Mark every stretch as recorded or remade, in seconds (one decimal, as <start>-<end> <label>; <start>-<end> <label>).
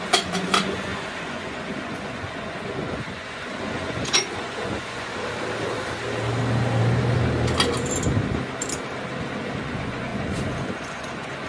0.0-5.1 remade; 5.1-9.6 recorded; 9.6-11.5 remade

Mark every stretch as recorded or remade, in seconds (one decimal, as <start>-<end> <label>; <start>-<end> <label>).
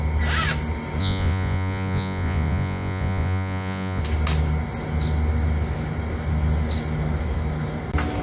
0.0-1.0 recorded; 1.0-4.0 remade; 4.0-8.2 recorded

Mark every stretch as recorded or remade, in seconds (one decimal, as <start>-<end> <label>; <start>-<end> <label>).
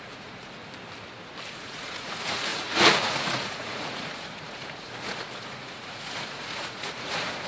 0.0-0.6 remade; 0.6-1.5 recorded; 1.5-7.5 remade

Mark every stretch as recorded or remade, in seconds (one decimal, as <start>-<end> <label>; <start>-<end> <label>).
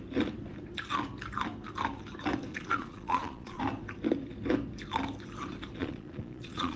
0.0-2.5 recorded; 2.5-3.6 remade; 3.6-5.8 recorded; 5.8-6.8 remade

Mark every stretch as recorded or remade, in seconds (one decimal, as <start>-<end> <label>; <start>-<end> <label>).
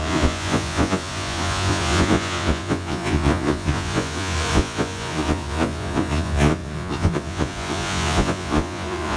0.0-9.2 remade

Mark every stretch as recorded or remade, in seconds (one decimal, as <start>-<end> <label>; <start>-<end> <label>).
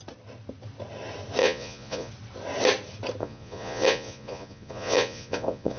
0.0-1.4 recorded; 1.4-2.1 remade; 2.1-3.2 recorded; 3.2-5.8 remade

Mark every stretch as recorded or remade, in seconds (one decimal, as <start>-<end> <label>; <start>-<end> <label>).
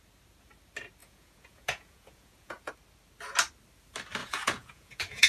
0.0-1.0 recorded; 1.0-2.7 remade; 2.7-4.2 recorded; 4.2-5.3 remade